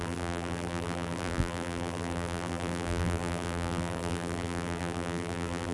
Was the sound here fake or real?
fake